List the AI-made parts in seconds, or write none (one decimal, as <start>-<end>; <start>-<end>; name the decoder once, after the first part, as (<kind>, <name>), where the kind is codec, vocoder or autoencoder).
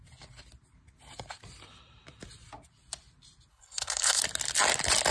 3.5-4.2 (codec, HILCodec)